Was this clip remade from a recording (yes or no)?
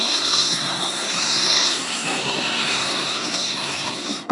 yes